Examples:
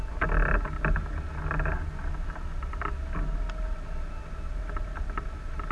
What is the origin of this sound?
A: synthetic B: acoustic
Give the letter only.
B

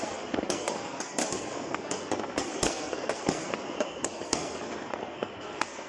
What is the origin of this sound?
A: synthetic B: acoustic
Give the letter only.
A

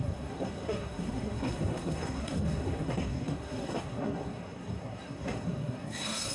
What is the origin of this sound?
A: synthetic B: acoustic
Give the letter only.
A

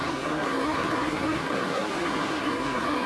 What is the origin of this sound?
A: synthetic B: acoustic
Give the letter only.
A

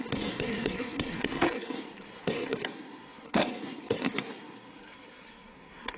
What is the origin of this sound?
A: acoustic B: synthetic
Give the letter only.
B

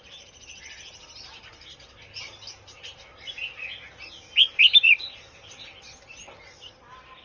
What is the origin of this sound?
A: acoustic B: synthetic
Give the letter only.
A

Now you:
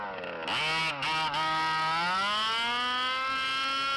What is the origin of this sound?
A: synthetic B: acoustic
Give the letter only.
B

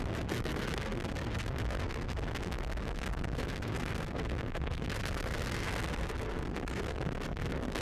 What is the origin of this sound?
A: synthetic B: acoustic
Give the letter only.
A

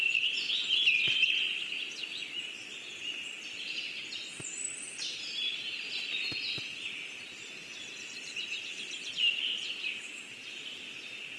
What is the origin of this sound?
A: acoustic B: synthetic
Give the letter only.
A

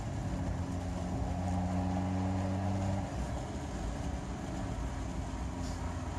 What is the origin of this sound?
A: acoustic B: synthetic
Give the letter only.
A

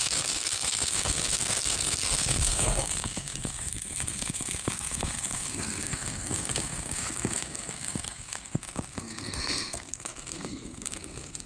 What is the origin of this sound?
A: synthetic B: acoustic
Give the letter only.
A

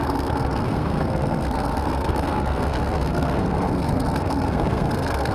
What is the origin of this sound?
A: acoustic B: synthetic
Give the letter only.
B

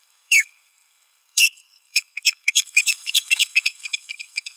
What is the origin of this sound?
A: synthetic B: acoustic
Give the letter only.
A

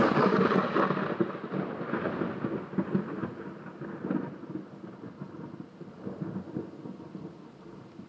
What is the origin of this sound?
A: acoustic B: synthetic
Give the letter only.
A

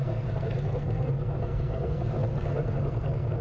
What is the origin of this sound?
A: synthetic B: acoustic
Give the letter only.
A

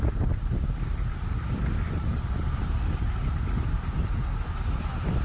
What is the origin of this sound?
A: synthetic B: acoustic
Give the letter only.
B